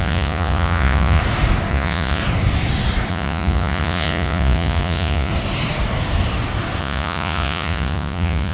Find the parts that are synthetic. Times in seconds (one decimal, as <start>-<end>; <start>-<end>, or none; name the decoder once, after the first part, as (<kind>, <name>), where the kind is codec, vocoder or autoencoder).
0.0-1.2 (vocoder, Vocos); 1.7-2.2; 3.1-5.3; 6.8-8.5